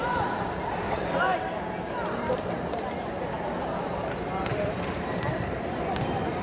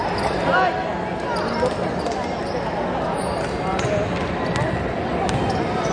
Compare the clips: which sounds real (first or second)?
second